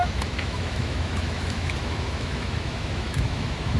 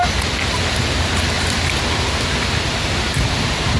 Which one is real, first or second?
second